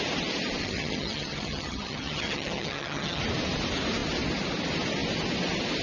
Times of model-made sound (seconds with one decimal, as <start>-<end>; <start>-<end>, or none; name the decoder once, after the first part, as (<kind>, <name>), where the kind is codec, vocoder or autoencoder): 0.6-3.2 (vocoder, HiFi-GAN)